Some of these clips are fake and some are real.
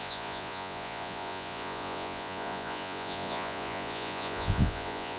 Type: fake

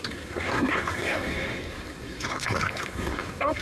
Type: fake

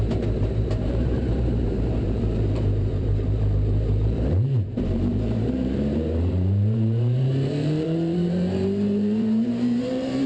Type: fake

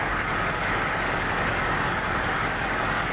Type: fake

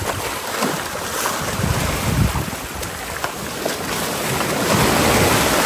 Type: real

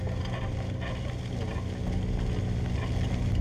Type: real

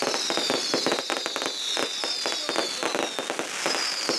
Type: real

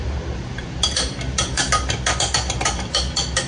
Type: fake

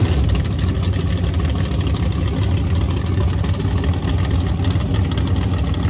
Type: real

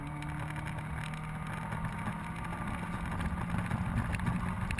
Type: real